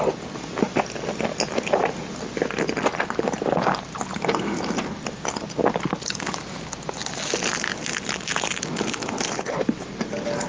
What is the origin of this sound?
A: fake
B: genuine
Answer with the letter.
B